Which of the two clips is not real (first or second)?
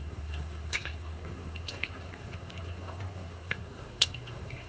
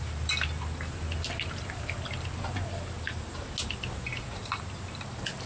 first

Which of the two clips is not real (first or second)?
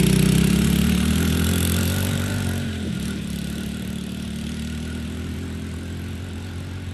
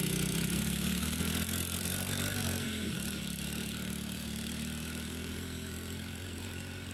second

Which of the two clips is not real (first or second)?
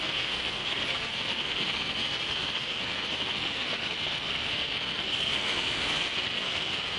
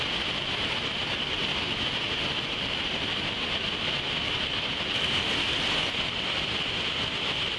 first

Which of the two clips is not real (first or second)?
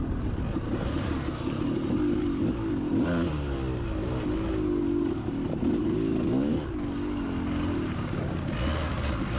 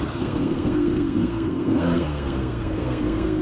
second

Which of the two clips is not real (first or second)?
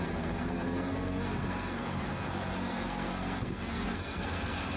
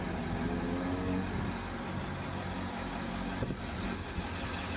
first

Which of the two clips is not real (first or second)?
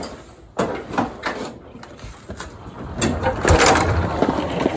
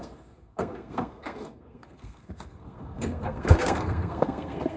second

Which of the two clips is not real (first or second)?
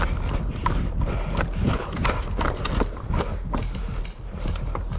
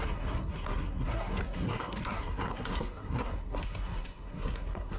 second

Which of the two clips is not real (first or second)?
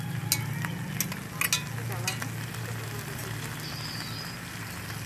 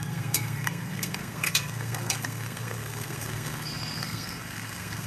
second